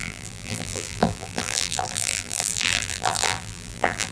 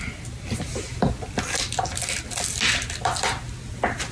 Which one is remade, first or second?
first